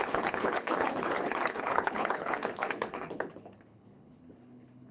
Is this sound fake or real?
fake